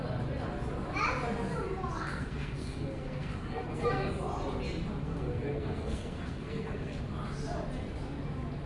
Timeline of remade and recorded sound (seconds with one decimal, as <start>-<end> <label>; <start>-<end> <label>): 0.0-1.9 recorded; 1.9-4.1 remade; 4.1-5.0 recorded; 5.0-7.0 remade; 7.0-8.7 recorded

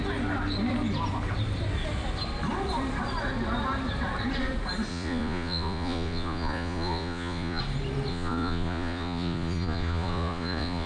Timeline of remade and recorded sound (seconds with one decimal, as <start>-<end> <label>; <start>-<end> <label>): 0.0-4.9 recorded; 4.9-7.6 remade; 7.6-8.1 recorded; 8.1-10.9 remade